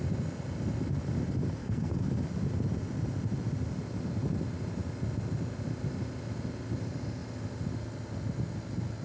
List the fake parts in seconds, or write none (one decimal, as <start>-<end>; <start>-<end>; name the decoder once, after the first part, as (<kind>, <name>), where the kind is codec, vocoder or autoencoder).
1.6-2.1 (codec, SNAC)